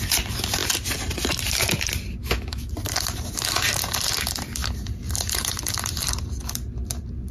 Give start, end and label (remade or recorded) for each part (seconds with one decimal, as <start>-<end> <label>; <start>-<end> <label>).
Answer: 0.0-2.2 recorded; 2.2-2.7 remade; 2.7-7.3 recorded